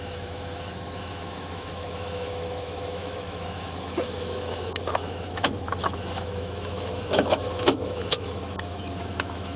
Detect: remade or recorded remade